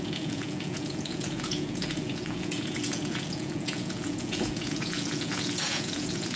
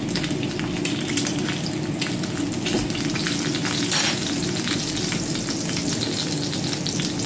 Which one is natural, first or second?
second